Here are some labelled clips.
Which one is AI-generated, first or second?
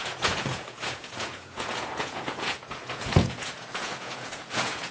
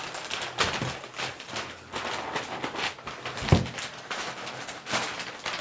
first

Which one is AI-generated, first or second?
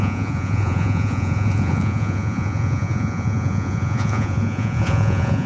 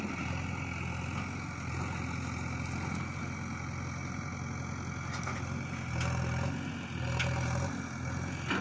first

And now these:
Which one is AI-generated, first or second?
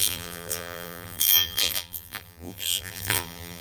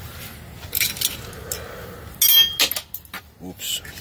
first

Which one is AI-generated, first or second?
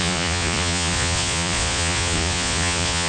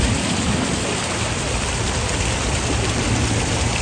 first